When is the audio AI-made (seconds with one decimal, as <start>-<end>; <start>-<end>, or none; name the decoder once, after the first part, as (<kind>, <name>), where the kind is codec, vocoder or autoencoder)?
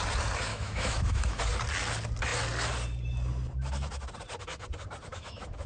0.5-1.4 (autoencoder, DAC-VAE); 5.1-5.7